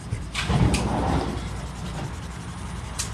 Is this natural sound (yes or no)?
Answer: yes